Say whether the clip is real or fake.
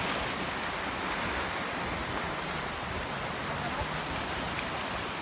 real